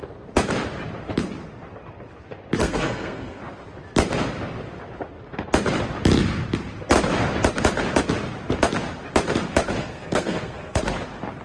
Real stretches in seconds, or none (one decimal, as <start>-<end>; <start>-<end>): 0.0-2.6; 3.4-9.8; 10.8-11.4